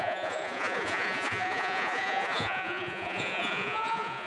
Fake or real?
fake